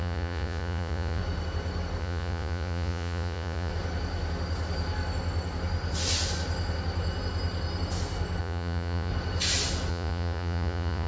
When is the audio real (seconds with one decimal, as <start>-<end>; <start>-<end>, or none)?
1.2-2.0; 3.7-8.4; 9.1-9.9